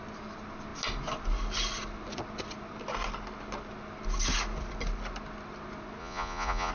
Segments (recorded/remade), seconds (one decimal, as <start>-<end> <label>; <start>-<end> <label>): 0.0-6.0 recorded; 6.0-6.7 remade